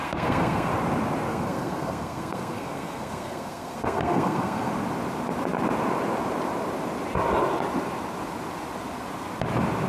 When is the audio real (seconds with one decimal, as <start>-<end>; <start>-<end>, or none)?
0.7-1.3; 4.7-9.9